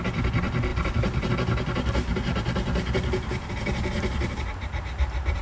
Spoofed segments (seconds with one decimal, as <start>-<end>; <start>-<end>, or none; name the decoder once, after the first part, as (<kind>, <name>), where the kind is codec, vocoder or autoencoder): none